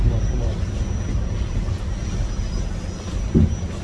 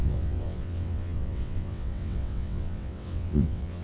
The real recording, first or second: first